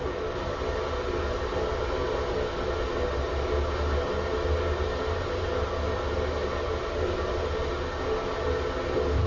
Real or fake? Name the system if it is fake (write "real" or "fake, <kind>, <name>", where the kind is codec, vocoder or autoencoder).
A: real